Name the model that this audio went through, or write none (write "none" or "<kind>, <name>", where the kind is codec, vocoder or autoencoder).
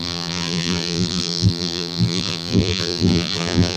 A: vocoder, BigVGAN v2